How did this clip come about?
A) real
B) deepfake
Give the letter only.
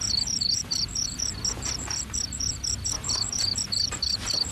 B